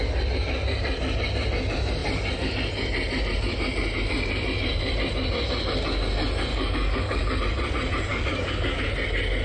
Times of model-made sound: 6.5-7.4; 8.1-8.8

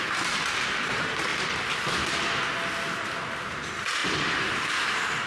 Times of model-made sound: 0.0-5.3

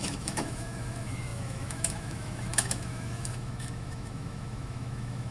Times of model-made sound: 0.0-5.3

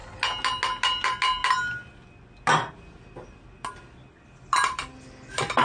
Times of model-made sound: none

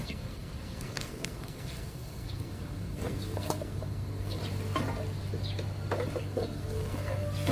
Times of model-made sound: 0.0-4.4; 6.2-7.5

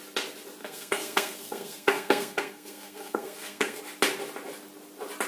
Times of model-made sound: 0.6-3.8

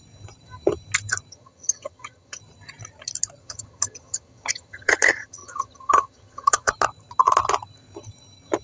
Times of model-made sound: 1.3-2.4; 3.4-6.7